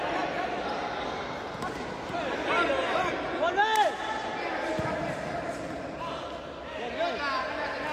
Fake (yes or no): no